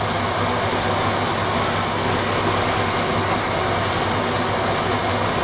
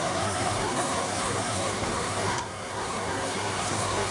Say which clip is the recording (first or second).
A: first